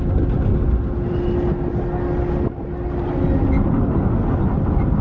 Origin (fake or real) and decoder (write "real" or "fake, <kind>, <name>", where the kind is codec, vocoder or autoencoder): real